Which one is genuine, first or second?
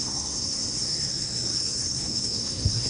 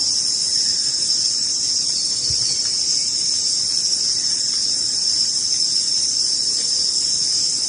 second